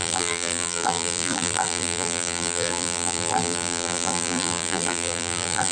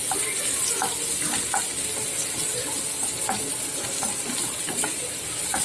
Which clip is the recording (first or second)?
second